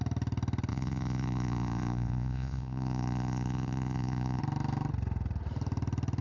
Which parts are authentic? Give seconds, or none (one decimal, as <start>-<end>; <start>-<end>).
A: 0.0-0.7; 4.4-6.2